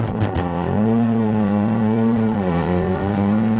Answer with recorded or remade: remade